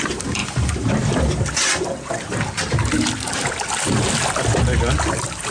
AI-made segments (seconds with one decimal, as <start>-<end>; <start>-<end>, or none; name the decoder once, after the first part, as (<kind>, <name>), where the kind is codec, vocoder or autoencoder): none